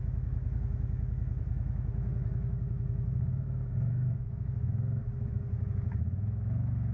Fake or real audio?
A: fake